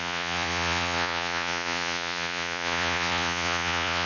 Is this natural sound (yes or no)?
no